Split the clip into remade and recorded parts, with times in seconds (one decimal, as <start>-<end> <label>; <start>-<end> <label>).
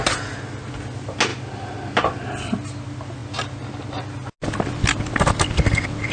0.0-6.1 recorded